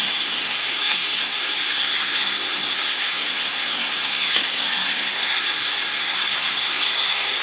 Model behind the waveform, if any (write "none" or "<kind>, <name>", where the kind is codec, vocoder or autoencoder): codec, SNAC